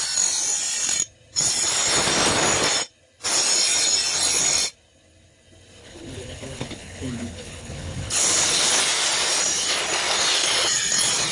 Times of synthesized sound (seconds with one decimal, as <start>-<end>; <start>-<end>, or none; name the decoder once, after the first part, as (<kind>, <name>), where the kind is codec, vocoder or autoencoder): 5.8-8.8 (codec, HILCodec)